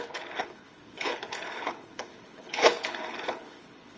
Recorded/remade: remade